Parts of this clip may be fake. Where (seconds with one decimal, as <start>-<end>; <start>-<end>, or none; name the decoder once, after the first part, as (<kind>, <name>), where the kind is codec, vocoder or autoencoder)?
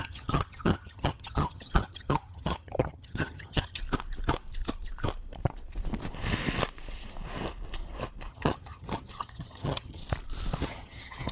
0.0-3.8 (vocoder, HiFi-GAN); 8.3-10.0; 10.6-11.3